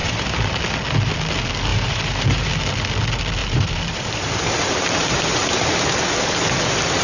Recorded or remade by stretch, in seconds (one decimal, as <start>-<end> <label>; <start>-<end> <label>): 0.0-0.5 remade; 0.5-1.7 recorded; 1.7-2.5 remade; 2.5-3.4 recorded; 3.4-5.2 remade; 5.2-7.0 recorded